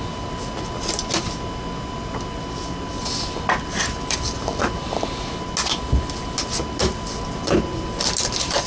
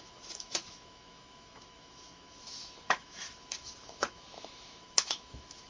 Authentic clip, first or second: first